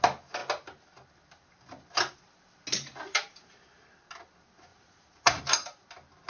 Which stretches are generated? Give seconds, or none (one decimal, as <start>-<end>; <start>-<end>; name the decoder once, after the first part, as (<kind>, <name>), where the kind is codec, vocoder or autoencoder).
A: 4.7-5.4 (vocoder, Vocos)